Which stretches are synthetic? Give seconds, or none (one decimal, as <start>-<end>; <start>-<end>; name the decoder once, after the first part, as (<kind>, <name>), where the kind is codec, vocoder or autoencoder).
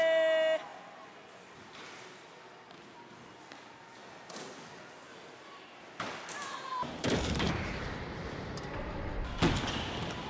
0.7-2.7 (vocoder, BigVGAN v2); 4.0-5.7; 6.4-9.3